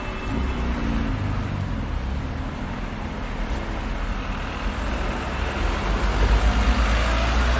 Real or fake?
real